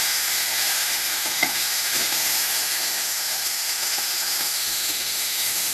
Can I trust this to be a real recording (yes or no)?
no